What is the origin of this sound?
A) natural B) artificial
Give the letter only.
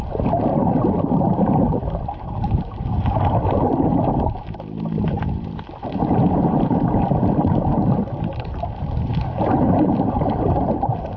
B